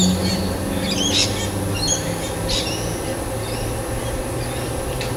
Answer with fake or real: real